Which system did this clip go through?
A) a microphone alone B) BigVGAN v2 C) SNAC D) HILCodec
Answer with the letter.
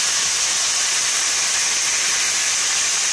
A